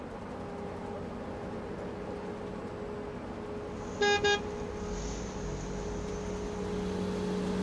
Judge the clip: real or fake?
real